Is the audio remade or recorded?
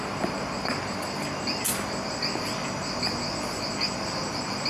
recorded